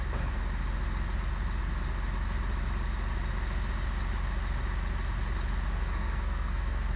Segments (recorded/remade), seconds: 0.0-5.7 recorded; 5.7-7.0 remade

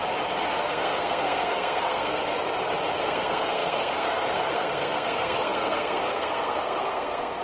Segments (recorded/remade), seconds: 0.0-0.6 recorded; 0.6-2.2 remade; 2.2-3.0 recorded; 3.0-7.4 remade

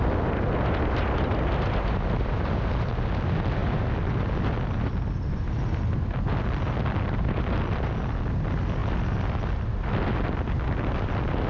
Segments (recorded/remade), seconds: 0.0-3.6 recorded; 3.6-4.6 remade; 4.6-11.5 recorded

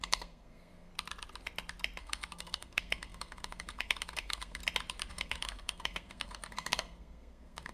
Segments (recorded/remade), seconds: 0.0-0.9 remade; 0.9-2.0 recorded; 2.0-4.6 remade; 4.6-5.1 recorded; 5.1-7.7 remade

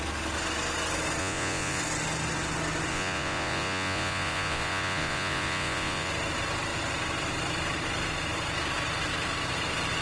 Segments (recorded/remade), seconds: 0.0-1.2 recorded; 1.2-1.8 remade; 1.8-2.9 recorded; 2.9-6.1 remade; 6.1-10.0 recorded

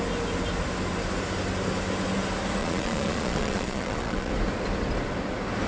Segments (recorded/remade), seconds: 0.0-2.6 recorded; 2.6-4.3 remade; 4.3-5.7 recorded

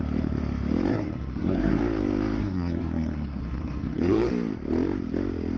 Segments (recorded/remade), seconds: 0.0-0.9 recorded; 0.9-1.8 remade; 1.8-2.4 recorded; 2.4-4.3 remade; 4.3-5.6 recorded